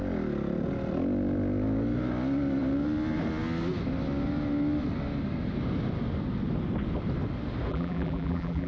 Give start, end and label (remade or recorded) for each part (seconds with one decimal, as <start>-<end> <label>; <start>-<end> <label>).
0.0-7.7 recorded; 7.7-8.7 remade